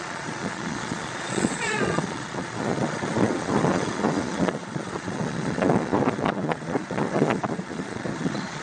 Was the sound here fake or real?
fake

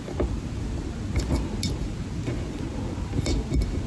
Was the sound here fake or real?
real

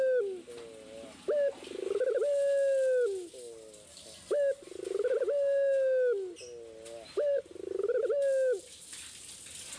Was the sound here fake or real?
real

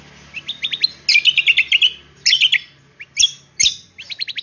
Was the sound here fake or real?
real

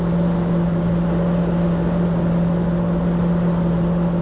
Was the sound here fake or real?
real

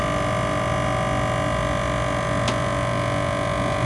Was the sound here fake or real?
real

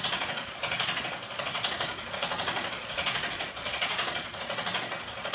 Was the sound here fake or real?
fake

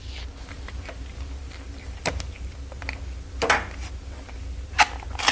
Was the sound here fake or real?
real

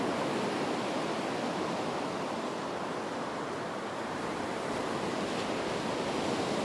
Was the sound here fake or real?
real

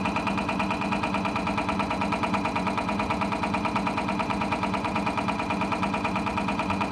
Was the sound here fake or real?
fake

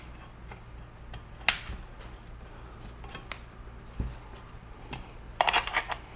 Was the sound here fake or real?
real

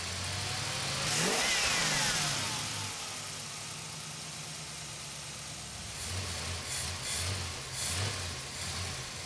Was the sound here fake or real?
real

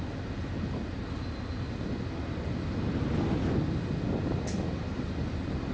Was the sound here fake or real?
real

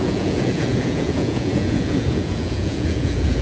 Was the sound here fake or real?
fake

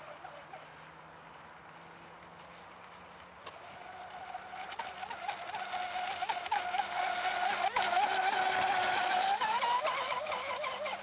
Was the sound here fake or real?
real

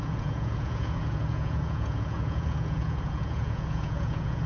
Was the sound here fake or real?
fake